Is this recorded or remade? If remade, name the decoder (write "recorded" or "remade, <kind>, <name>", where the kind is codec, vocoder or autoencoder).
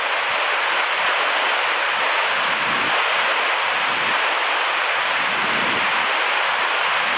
recorded